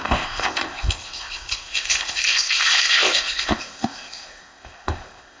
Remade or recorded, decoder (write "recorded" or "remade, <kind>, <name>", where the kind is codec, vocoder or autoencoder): remade, codec, ZipCodec